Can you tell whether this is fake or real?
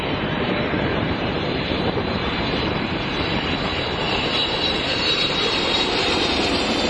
fake